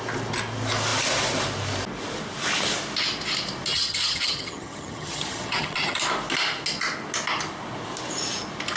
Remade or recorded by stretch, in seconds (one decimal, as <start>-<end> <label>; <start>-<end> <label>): 0.0-3.7 recorded; 3.7-6.0 remade; 6.0-8.8 recorded